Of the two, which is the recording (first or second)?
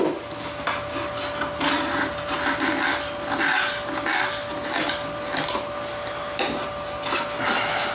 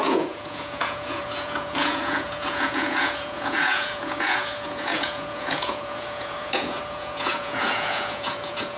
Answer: first